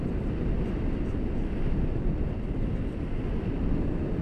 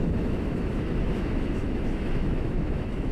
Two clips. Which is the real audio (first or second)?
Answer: first